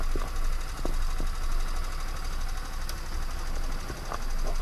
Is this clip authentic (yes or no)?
yes